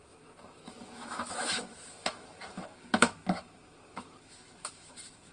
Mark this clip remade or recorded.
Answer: remade